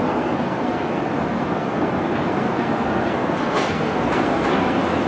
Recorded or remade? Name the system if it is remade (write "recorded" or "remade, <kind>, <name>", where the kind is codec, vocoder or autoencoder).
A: remade, codec, SNAC